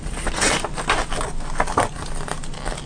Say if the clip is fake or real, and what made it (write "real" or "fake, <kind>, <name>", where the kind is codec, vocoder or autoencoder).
real